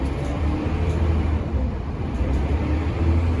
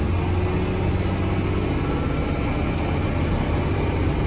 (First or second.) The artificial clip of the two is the first